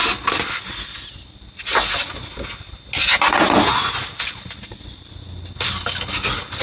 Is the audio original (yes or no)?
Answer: yes